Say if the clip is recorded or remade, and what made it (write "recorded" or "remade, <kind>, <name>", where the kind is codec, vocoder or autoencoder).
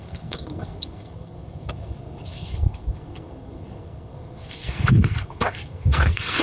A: remade, codec, SNAC